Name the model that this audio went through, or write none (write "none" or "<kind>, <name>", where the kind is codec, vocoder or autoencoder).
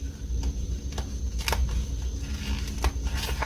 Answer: none